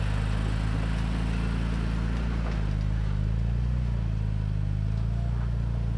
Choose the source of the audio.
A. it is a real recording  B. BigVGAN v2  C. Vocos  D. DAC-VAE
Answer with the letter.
A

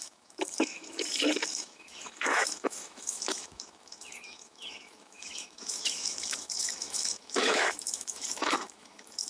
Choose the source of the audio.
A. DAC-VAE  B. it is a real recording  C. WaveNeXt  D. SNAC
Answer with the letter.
A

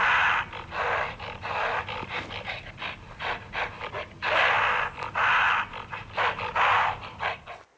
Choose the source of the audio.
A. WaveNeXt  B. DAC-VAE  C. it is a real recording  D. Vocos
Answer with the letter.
C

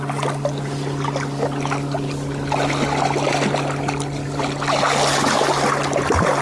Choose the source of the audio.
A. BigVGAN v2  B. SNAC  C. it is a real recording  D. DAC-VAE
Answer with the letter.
C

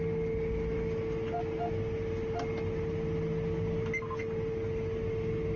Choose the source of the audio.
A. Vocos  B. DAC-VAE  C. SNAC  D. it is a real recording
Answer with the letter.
D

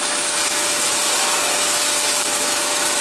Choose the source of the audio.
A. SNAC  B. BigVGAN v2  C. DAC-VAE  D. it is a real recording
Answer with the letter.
C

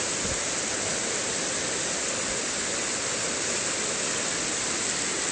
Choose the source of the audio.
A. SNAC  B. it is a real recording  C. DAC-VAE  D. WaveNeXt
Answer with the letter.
B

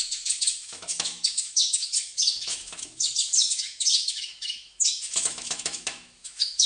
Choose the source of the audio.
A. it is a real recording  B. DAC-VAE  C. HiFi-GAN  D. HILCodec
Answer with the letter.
B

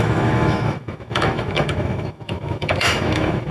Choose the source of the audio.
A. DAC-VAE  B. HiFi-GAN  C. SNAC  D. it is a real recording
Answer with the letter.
A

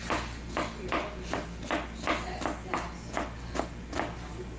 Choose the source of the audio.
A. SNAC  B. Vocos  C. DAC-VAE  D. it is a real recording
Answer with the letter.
D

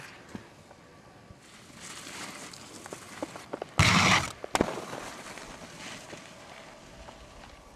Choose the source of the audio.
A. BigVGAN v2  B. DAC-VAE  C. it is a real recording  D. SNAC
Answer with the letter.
C